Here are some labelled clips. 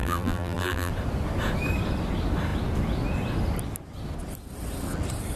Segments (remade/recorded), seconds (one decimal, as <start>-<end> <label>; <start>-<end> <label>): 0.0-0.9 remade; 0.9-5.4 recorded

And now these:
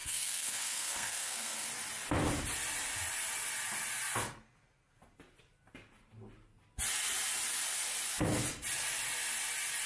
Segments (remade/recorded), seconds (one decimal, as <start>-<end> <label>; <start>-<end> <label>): 0.0-1.7 remade; 1.7-9.9 recorded

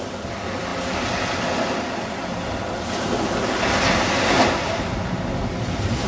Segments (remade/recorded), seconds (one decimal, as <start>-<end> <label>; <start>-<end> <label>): 0.0-6.1 recorded

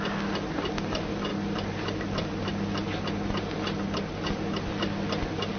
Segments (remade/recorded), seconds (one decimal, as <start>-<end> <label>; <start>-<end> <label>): 0.0-5.6 recorded

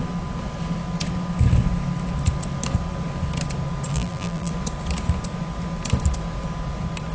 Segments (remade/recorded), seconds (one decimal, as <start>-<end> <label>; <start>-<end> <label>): 0.0-3.9 recorded; 3.9-4.5 remade; 4.5-7.1 recorded